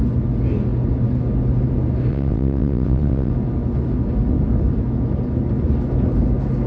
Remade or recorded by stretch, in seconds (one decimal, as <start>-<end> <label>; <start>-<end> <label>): 0.0-2.1 recorded; 2.1-3.3 remade; 3.3-6.7 recorded